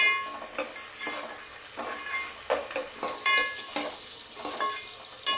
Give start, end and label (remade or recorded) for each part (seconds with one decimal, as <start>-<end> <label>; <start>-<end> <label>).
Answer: 0.0-5.4 recorded